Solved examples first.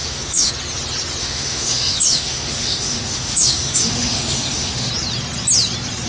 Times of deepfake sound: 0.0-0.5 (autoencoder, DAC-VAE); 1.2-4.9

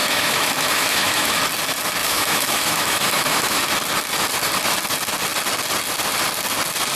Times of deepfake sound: 0.0-1.4 (autoencoder, DAC-VAE); 2.0-3.6

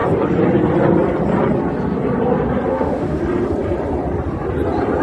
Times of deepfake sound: 2.7-3.2 (autoencoder, DAC-VAE)

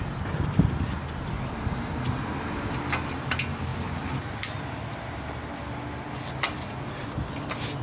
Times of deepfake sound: none

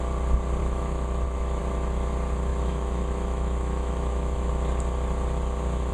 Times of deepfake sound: 0.6-1.6 (autoencoder, DAC-VAE); 2.5-4.5

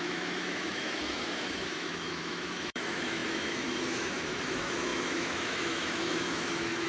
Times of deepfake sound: 0.0-6.9 (autoencoder, DAC-VAE)

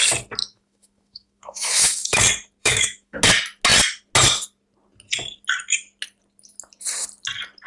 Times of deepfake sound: 0.4-2.2 (autoencoder, DAC-VAE); 2.6-3.2

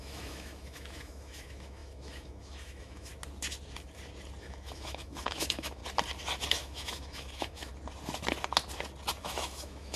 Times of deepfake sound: 0.0-3.1 (autoencoder, DAC-VAE); 4.4-5.8; 6.5-7.7; 9.2-10.0